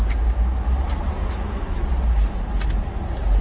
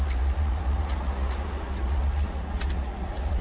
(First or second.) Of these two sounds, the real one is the first